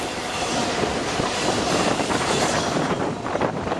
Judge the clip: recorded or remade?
remade